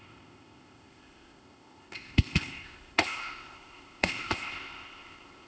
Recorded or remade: remade